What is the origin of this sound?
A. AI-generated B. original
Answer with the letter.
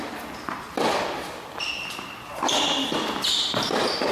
B